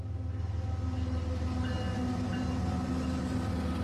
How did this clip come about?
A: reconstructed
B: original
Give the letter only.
B